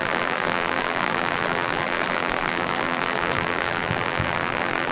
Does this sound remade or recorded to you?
remade